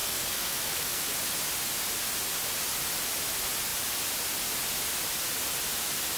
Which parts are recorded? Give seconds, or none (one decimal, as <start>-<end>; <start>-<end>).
1.0-6.2